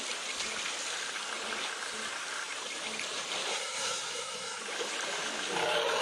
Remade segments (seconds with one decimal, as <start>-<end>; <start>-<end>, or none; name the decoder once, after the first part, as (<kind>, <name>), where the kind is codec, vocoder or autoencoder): 3.5-4.6 (codec, SNAC)

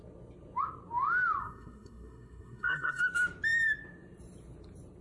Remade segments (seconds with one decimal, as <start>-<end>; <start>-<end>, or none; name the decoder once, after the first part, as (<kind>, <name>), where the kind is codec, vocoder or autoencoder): 1.4-3.0 (codec, SNAC)

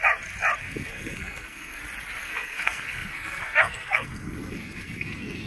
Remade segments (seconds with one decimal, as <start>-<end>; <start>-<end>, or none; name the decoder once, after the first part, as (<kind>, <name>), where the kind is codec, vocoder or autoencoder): 0.6-1.8 (codec, SNAC); 2.2-5.5

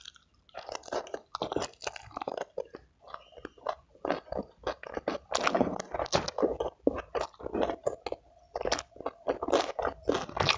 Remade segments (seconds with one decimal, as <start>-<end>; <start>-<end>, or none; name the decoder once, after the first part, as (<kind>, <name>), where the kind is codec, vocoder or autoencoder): none

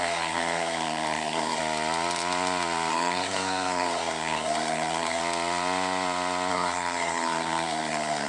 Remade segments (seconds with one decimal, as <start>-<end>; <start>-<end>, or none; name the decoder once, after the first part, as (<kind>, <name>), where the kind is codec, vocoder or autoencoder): 0.0-1.6 (codec, SNAC); 2.9-5.2; 6.5-8.3

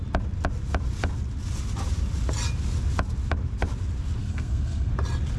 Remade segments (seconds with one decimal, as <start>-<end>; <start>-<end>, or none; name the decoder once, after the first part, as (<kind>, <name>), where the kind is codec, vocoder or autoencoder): 4.2-4.9 (codec, SNAC)